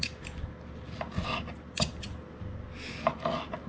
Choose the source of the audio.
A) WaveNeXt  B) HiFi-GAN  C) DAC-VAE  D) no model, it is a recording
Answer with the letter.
D